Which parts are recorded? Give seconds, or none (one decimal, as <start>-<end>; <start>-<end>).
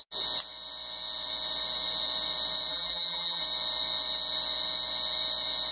0.0-2.7; 3.4-5.7